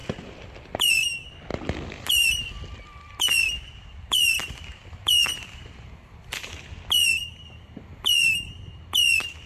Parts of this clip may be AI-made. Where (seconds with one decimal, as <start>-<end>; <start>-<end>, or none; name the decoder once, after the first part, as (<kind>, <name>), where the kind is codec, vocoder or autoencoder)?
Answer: none